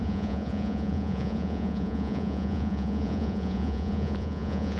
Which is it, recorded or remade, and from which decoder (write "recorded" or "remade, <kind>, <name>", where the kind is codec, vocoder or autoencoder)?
remade, vocoder, Vocos